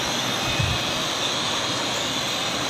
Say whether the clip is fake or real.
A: real